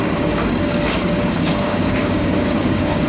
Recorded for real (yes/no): no